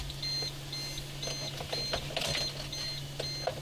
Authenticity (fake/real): real